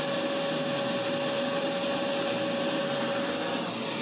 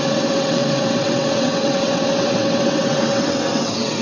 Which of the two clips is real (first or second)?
first